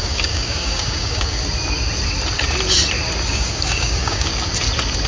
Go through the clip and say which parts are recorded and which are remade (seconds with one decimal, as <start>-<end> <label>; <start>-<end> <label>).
0.0-1.4 remade; 1.4-3.3 recorded; 3.3-4.3 remade; 4.3-5.1 recorded